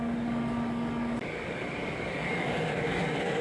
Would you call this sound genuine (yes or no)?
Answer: no